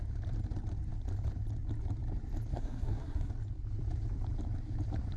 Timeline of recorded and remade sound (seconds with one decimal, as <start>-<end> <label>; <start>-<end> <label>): 0.0-2.5 recorded; 2.5-3.3 remade; 3.3-5.2 recorded

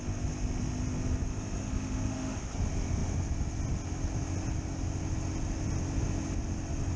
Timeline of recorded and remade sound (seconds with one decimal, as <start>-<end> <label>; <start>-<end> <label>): 0.0-1.6 recorded; 1.6-2.5 remade; 2.5-7.0 recorded

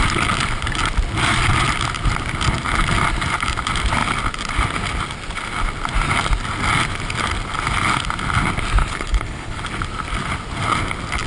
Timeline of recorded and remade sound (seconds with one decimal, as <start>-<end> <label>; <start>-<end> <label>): 0.0-8.8 recorded; 8.8-9.6 remade; 9.6-11.3 recorded

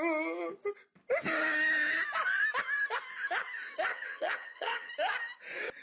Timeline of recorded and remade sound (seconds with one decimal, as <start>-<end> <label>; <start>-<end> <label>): 0.0-3.9 recorded; 3.9-4.9 remade; 4.9-5.8 recorded

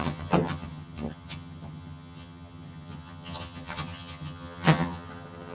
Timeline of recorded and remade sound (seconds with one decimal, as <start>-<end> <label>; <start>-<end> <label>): 0.0-5.5 remade

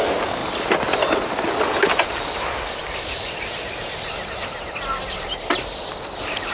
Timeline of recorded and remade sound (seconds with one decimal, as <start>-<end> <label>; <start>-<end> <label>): 0.0-6.5 recorded

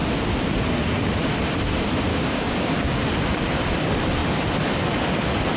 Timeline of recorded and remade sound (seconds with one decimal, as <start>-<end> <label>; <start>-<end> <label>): 0.0-2.1 recorded; 2.1-3.0 remade; 3.0-5.6 recorded

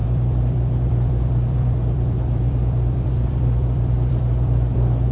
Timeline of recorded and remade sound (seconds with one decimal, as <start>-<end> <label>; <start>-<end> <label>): 0.0-5.1 remade